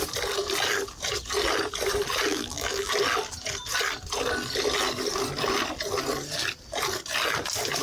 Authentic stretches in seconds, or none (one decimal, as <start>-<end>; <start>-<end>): 0.0-2.3; 2.9-7.8